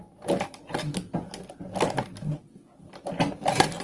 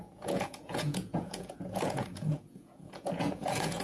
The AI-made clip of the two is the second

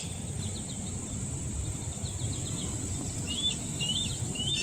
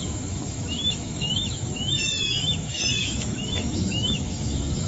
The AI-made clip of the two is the second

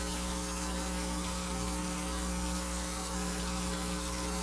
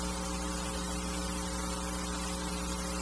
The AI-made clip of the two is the first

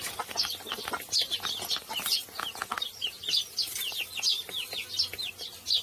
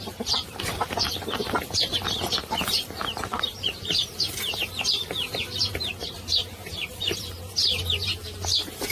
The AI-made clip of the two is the second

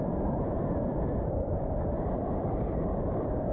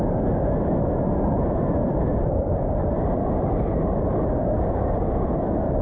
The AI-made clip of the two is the first